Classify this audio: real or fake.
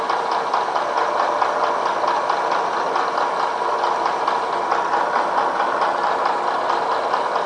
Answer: real